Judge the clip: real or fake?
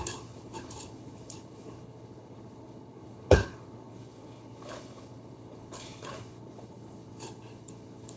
fake